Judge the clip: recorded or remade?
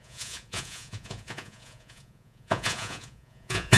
remade